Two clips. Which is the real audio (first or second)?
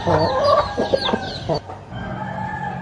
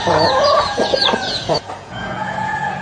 first